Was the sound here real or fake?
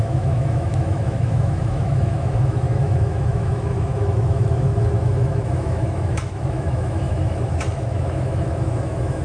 fake